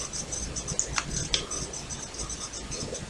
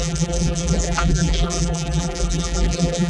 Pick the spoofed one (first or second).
second